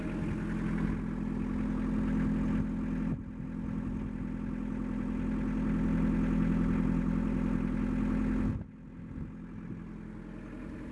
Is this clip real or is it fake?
real